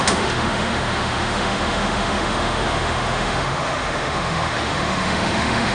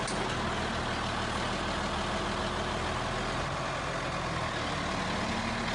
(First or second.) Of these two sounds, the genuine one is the second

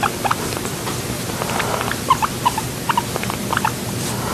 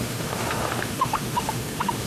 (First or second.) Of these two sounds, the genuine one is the first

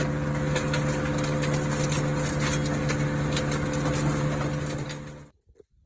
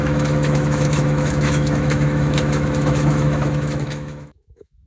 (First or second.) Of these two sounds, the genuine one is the first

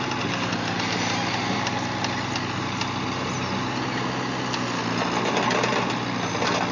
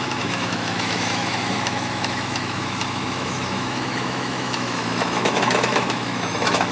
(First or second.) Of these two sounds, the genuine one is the first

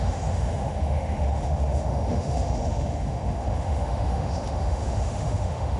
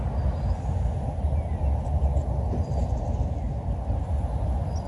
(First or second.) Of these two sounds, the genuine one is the second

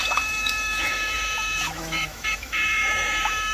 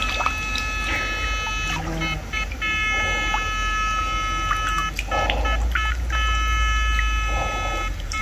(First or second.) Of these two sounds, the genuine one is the second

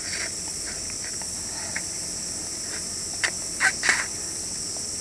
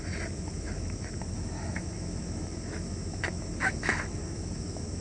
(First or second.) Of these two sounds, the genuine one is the first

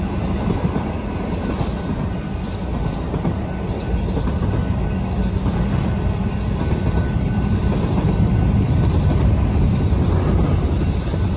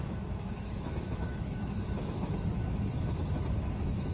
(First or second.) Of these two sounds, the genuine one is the first